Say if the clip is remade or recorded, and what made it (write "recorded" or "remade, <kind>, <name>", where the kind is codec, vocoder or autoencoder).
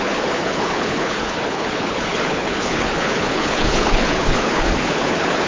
remade, codec, HILCodec